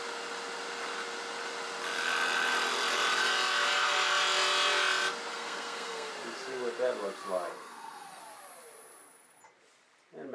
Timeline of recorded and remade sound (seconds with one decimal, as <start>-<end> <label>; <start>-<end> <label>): 0.0-5.3 recorded; 5.3-6.1 remade; 6.1-7.5 recorded; 7.5-8.2 remade; 8.2-10.3 recorded